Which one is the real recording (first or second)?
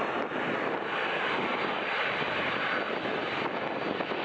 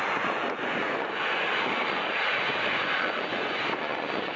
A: first